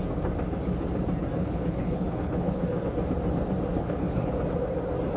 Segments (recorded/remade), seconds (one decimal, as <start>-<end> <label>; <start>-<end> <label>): 0.0-1.4 recorded; 1.4-2.9 remade; 2.9-3.7 recorded; 3.7-4.3 remade; 4.3-5.2 recorded